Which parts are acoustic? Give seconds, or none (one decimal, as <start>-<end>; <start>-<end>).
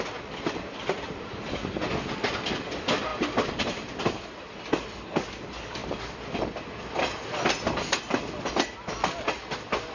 0.0-9.9